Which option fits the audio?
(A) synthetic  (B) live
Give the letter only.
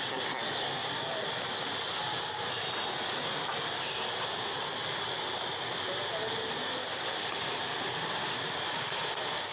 B